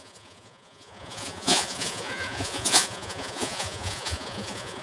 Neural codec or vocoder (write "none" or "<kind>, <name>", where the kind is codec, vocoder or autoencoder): vocoder, Vocos